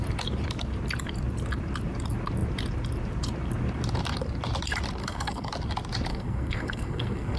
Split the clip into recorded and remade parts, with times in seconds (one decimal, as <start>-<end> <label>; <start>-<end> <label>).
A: 0.0-5.0 recorded; 5.0-5.5 remade; 5.5-6.1 recorded; 6.1-7.4 remade

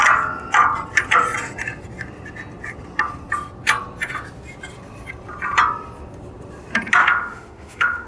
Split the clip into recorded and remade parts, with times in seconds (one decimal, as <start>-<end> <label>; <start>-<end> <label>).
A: 0.0-7.0 recorded; 7.0-8.1 remade

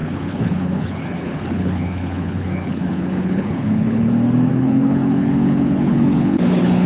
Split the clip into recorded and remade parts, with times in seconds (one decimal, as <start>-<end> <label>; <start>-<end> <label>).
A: 0.0-4.1 remade; 4.1-4.5 recorded; 4.5-6.9 remade

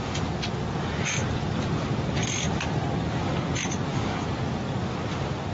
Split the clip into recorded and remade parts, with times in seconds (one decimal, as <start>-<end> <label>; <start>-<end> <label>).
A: 0.0-5.5 recorded

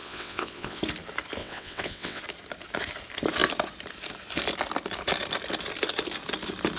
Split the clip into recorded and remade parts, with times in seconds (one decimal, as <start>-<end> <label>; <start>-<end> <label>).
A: 0.0-0.8 remade; 0.8-1.4 recorded; 1.4-2.2 remade; 2.2-6.8 recorded

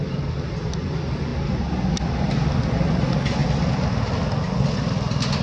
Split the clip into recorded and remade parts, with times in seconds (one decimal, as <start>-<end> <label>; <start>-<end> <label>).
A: 0.0-5.4 recorded

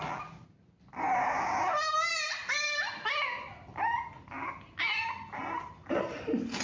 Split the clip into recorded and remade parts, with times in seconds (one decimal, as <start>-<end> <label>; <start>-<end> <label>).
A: 0.0-6.6 recorded

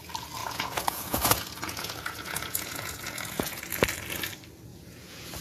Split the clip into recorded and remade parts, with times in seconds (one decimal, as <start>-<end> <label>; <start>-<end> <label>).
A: 0.0-0.4 recorded; 0.4-3.6 remade; 3.6-4.7 recorded; 4.7-5.4 remade